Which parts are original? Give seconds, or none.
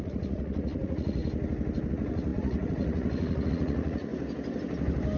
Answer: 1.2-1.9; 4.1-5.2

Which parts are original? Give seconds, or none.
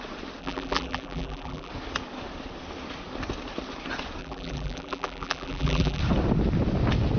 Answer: 0.0-0.4; 1.7-4.2; 6.0-7.2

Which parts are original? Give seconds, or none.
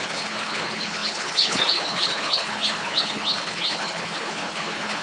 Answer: none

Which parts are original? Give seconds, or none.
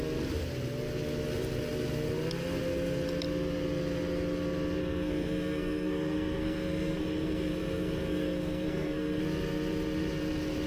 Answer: 0.0-4.8; 9.2-10.7